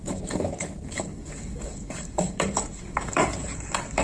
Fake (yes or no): yes